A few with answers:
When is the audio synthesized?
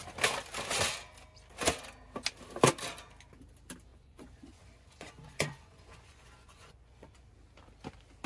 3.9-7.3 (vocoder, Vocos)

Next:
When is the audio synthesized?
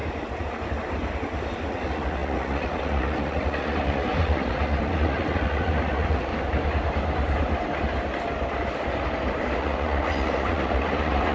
1.7-6.3 (vocoder, Vocos); 9.6-11.3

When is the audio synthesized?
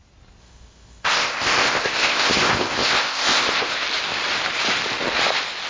0.4-3.8 (codec, ZipCodec)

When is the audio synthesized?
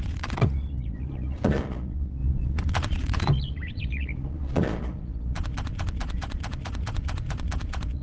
0.0-8.0 (vocoder, Vocos)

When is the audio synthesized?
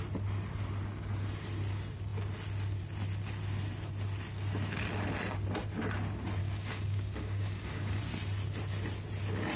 6.4-8.0 (codec, DAC)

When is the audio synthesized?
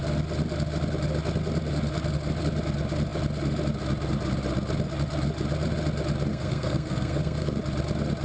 6.3-7.6 (codec, SNAC)